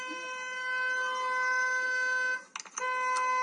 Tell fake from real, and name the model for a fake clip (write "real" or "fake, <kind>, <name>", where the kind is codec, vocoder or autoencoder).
real